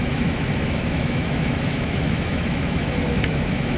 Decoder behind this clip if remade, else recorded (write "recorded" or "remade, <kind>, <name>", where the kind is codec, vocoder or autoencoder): remade, autoencoder, DAC-VAE